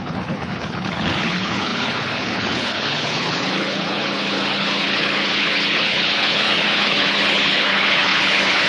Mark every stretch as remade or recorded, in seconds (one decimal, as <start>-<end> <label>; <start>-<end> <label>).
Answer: 0.0-8.7 remade